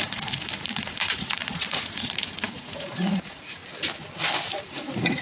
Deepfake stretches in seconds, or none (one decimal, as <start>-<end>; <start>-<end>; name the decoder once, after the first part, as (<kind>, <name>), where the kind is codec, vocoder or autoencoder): 0.0-3.6 (vocoder, Vocos); 4.6-5.2